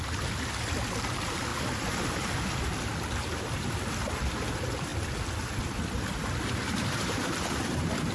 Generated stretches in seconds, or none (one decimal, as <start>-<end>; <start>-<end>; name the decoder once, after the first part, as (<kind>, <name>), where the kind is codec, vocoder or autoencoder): 0.0-1.5 (vocoder, BigVGAN v2); 3.7-4.9; 5.6-8.1

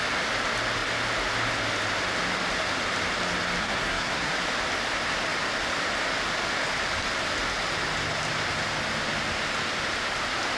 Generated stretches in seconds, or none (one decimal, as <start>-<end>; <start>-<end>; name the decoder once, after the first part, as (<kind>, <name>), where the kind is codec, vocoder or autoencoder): 3.6-4.3 (codec, SNAC)

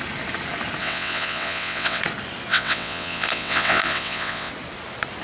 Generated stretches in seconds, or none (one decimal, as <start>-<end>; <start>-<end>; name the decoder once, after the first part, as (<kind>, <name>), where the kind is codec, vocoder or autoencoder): 0.8-2.0 (vocoder, WaveNeXt); 2.5-4.5

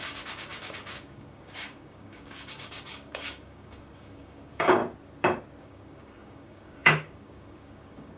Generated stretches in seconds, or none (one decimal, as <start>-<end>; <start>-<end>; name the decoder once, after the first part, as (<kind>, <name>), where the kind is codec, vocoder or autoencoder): 0.0-4.8 (codec, DAC); 5.6-8.2

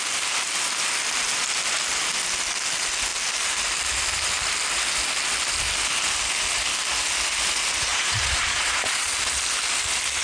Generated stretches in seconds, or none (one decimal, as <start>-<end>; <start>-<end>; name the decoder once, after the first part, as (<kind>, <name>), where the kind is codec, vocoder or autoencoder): 7.9-9.1 (vocoder, Vocos)

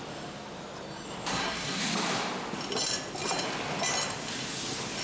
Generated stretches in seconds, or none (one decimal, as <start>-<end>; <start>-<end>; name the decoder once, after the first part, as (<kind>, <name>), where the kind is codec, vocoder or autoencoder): 1.3-1.8 (codec, SNAC)